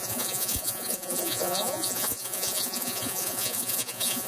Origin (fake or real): fake